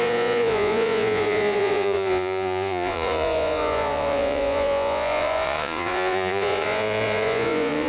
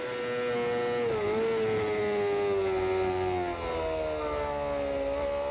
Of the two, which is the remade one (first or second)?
first